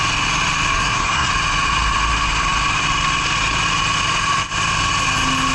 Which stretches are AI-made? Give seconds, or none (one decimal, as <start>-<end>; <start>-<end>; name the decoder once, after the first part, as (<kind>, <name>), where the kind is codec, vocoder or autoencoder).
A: 0.7-1.3 (codec, SNAC)